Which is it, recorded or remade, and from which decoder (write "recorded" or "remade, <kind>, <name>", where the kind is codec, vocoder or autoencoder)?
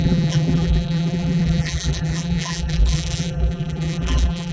remade, vocoder, BigVGAN v2